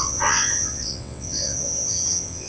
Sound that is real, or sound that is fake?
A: fake